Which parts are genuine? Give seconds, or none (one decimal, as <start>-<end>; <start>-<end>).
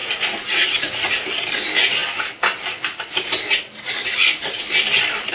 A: 1.1-5.3